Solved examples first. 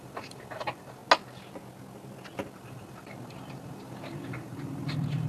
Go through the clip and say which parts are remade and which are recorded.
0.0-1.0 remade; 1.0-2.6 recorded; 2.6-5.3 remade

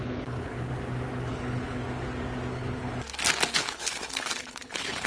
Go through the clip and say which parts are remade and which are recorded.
0.0-0.7 remade; 0.7-1.3 recorded; 1.3-1.8 remade; 1.8-2.5 recorded; 2.5-2.9 remade; 2.9-3.6 recorded; 3.6-5.1 remade

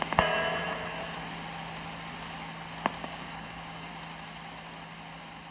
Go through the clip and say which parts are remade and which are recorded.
0.0-3.0 recorded; 3.0-3.9 remade; 3.9-5.5 recorded